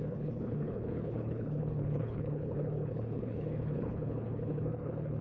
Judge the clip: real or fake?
fake